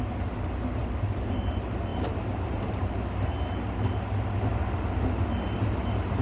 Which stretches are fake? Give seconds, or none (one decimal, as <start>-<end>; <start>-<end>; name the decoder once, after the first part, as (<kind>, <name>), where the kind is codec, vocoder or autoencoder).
0.8-1.4 (vocoder, BigVGAN v2); 1.9-2.9